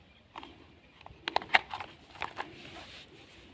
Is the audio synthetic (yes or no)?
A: no